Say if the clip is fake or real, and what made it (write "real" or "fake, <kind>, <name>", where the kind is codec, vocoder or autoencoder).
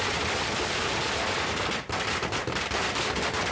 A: real